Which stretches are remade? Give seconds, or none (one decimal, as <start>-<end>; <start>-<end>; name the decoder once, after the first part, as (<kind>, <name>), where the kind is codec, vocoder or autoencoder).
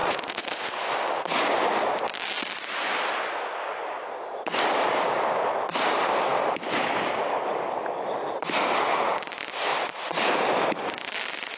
0.0-0.7 (vocoder, Vocos)